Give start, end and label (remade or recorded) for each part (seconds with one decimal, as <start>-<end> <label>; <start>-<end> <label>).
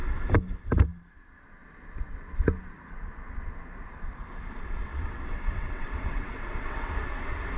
0.0-4.8 recorded; 4.8-6.9 remade; 6.9-7.6 recorded